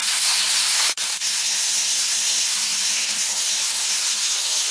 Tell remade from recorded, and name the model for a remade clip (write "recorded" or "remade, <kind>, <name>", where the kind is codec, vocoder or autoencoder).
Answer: remade, codec, SNAC